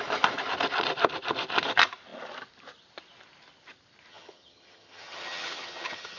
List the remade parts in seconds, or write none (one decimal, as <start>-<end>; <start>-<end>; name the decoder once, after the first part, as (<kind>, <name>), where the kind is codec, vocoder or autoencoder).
4.1-6.2 (vocoder, HiFi-GAN)

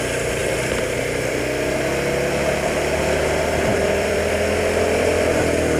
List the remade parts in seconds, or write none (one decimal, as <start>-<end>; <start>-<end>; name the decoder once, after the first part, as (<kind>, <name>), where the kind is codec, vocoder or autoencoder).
0.4-1.4 (vocoder, BigVGAN v2); 3.7-4.6

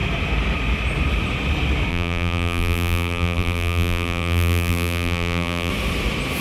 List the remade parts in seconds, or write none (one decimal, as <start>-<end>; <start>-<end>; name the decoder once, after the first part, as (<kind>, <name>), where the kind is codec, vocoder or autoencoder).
1.9-5.7 (vocoder, BigVGAN v2)

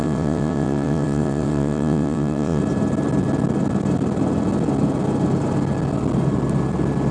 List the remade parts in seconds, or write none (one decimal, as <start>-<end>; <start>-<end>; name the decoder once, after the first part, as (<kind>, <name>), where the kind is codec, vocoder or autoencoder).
0.0-2.6 (vocoder, WaveNeXt)

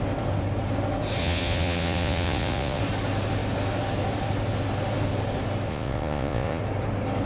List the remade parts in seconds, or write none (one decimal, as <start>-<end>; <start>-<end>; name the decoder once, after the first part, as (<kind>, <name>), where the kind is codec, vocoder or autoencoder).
1.2-2.8 (vocoder, Vocos); 5.7-6.6

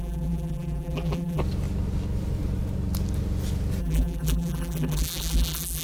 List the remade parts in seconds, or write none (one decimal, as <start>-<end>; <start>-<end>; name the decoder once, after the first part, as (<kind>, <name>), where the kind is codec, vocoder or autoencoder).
0.0-1.4 (vocoder, BigVGAN v2); 3.8-5.8